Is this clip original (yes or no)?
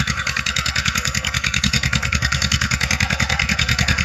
no